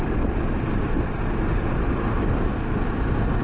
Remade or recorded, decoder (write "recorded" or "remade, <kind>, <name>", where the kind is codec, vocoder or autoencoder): recorded